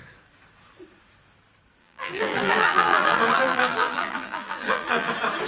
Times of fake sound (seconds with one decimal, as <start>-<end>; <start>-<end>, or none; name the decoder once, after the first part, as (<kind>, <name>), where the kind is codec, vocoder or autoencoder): 1.8-5.1 (vocoder, BigVGAN v2)